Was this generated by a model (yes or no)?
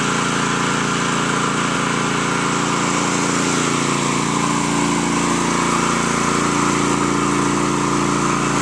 no